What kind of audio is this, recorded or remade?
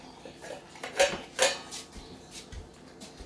recorded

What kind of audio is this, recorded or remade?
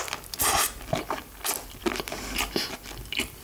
recorded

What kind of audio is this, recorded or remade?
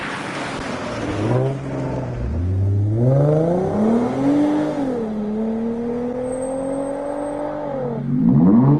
recorded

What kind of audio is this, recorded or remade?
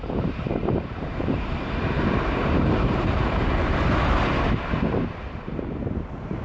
remade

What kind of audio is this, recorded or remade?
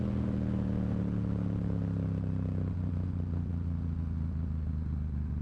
recorded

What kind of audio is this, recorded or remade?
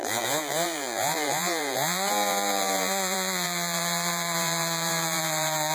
remade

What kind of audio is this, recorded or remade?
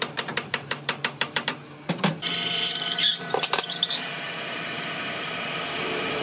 remade